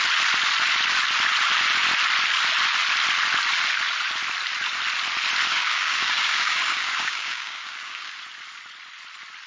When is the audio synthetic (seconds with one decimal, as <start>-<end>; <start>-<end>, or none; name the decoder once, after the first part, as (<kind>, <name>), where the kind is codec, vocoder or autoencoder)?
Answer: 5.5-8.2 (codec, DAC)